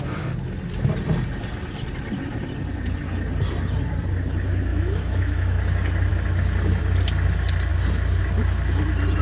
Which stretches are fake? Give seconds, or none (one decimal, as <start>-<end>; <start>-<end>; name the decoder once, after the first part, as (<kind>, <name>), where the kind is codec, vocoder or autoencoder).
4.7-5.6 (autoencoder, DAC-VAE)